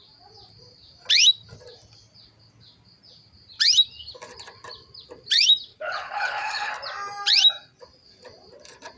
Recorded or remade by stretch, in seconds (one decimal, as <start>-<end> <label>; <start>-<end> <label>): 0.0-5.7 recorded; 5.7-6.7 remade; 6.7-9.0 recorded